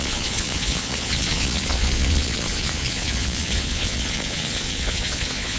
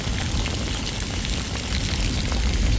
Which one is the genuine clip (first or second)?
second